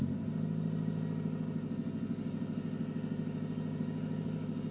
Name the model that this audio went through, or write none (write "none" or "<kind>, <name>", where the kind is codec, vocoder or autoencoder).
none